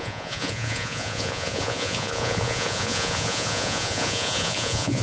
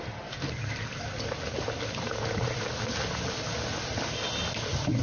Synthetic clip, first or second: first